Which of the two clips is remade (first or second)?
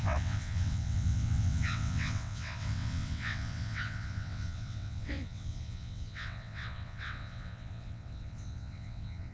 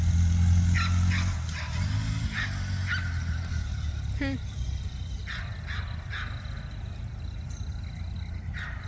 first